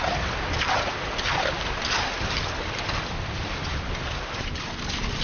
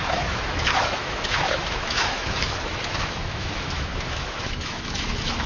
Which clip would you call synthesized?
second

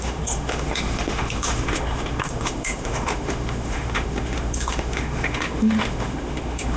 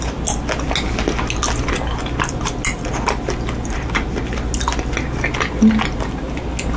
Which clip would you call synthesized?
first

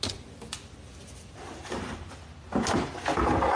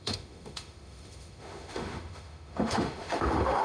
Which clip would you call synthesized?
second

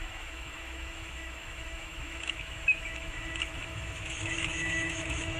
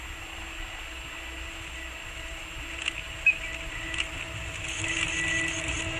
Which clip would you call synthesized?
first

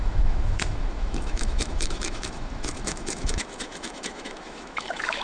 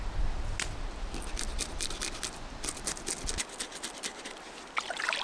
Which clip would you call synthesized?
first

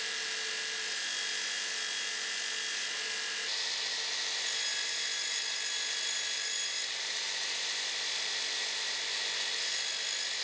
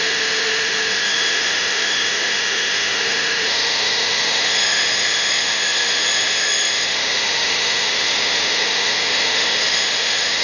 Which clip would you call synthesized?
second